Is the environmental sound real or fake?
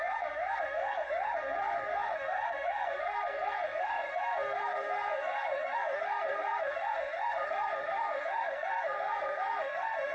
fake